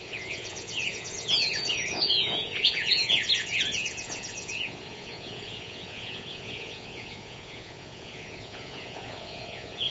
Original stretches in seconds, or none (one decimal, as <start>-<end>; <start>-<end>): none